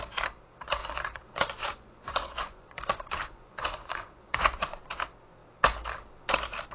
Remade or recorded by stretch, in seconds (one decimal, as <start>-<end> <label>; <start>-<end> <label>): 0.0-0.8 recorded; 0.8-4.8 remade; 4.8-6.7 recorded